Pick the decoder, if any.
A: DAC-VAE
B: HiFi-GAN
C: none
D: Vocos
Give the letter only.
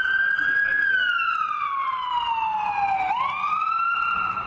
C